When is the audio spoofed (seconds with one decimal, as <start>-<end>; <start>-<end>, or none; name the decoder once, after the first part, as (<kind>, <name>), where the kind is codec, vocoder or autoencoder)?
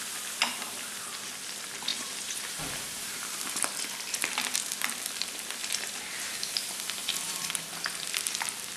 1.9-3.5 (vocoder, BigVGAN v2); 5.6-6.5; 7.0-7.6